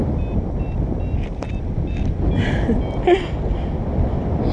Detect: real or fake real